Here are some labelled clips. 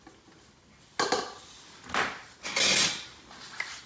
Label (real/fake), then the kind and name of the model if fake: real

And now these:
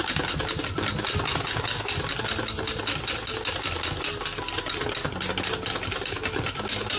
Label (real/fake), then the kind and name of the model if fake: real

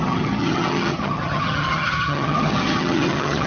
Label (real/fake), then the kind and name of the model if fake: fake, vocoder, HiFi-GAN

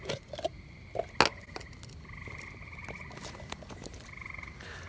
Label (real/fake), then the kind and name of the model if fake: real